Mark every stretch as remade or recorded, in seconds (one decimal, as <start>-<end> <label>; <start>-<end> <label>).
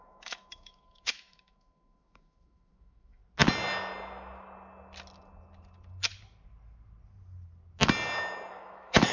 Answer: 0.0-3.2 remade; 3.2-8.5 recorded; 8.5-9.1 remade